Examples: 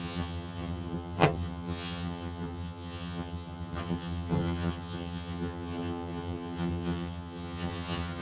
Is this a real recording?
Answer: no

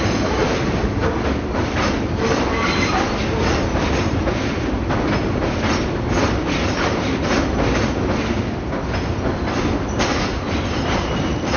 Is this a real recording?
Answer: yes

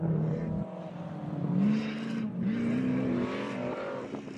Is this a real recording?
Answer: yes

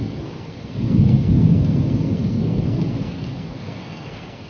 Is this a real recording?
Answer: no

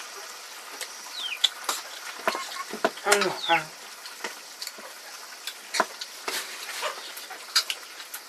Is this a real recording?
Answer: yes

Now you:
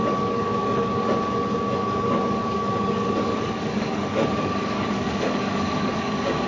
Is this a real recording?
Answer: no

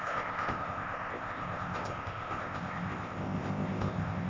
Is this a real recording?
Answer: no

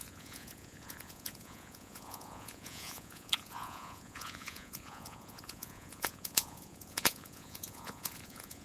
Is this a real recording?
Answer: no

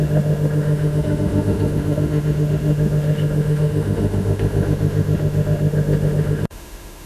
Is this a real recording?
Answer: no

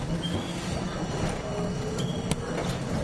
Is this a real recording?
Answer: yes